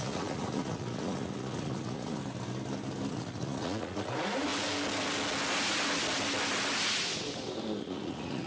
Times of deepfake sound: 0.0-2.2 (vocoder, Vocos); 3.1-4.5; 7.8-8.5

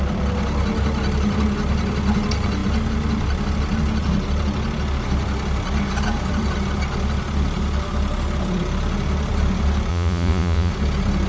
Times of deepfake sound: 9.9-10.7 (vocoder, Vocos)

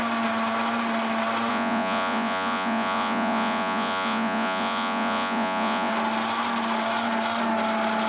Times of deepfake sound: 1.5-5.9 (vocoder, Vocos)

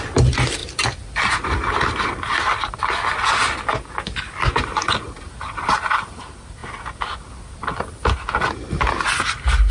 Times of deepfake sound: none

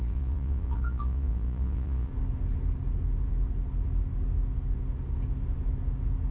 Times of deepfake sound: 0.0-2.1 (vocoder, Vocos)

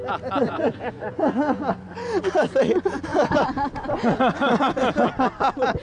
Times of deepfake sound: 0.4-2.6 (vocoder, Vocos); 3.1-4.6